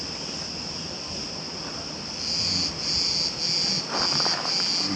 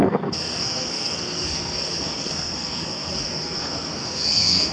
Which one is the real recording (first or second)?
first